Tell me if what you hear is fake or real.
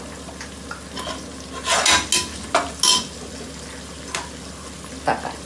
real